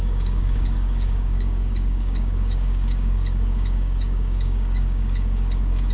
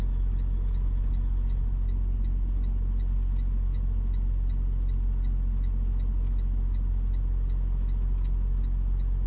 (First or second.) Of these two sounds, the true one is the second